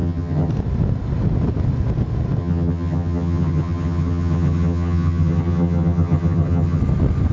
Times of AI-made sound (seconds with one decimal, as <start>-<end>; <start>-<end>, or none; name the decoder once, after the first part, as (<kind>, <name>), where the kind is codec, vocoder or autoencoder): 0.0-0.5 (vocoder, HiFi-GAN); 2.4-6.8